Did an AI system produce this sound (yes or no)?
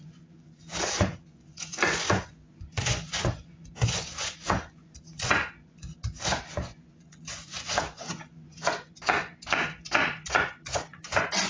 yes